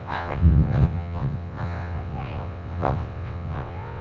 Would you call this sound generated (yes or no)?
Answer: yes